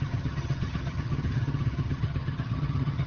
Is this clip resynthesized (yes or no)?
yes